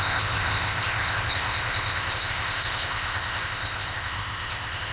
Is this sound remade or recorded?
remade